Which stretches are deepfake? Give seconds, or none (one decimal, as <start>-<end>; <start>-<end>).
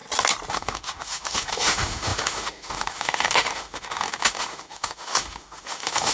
0.5-6.1